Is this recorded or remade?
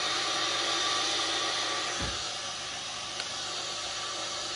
recorded